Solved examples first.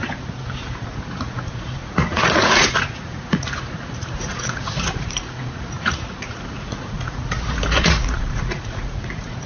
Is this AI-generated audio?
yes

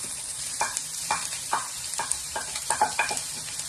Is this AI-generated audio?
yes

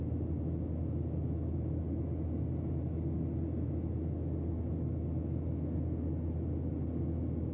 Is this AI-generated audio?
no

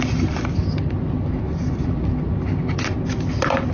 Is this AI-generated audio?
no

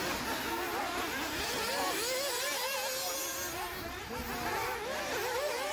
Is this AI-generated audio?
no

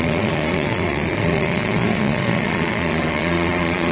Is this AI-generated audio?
yes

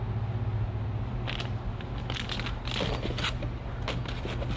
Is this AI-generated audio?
no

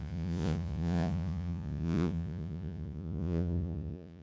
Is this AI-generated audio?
yes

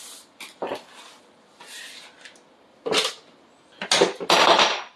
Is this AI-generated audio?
no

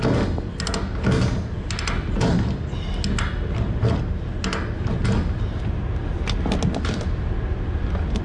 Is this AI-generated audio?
no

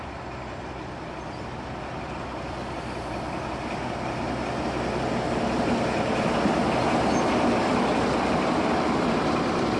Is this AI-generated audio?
no